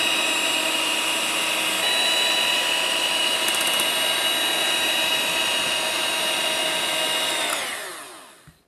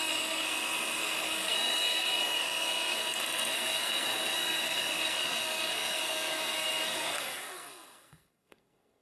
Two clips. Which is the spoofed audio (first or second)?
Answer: second